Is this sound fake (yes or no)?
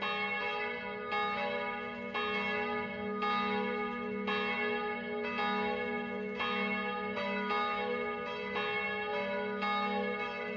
no